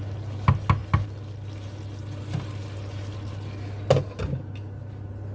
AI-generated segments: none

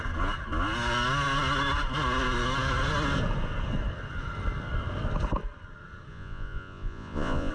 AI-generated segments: 6.1-7.5 (vocoder, Vocos)

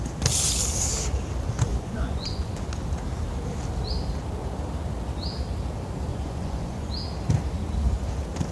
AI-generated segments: 1.7-2.5 (vocoder, Vocos); 6.1-6.9

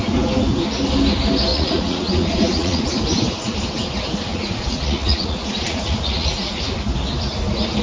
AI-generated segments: 1.5-2.8 (vocoder, Vocos); 4.3-6.6